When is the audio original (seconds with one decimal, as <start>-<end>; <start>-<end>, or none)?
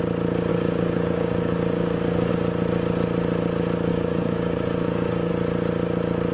0.0-0.5; 2.3-3.9; 5.3-6.3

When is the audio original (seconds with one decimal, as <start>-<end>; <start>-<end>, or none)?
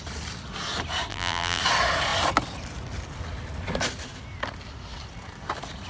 0.0-1.1; 1.6-5.9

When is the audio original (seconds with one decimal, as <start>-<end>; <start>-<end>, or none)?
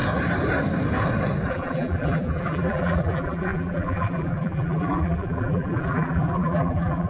0.0-1.5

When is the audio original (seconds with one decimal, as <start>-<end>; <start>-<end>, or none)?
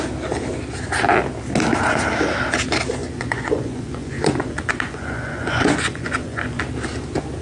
0.0-3.0; 6.6-7.4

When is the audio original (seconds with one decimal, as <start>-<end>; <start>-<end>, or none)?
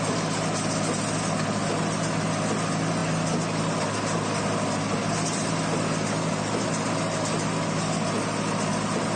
0.0-9.2